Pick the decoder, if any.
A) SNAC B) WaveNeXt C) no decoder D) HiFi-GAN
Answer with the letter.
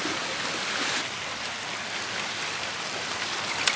C